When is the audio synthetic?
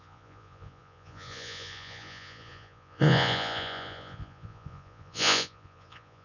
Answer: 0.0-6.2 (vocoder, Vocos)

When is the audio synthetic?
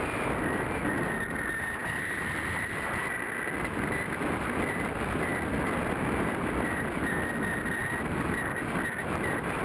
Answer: none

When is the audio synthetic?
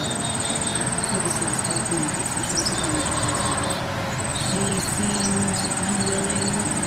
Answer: 0.7-1.8 (vocoder, BigVGAN v2); 2.2-3.4; 4.3-4.9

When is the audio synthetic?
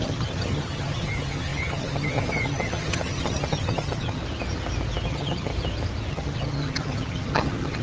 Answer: 0.0-4.2 (vocoder, HiFi-GAN); 5.1-5.5; 6.1-7.8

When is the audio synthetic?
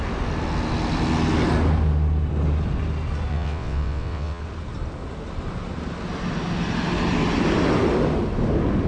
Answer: 3.3-4.4 (vocoder, WaveNeXt)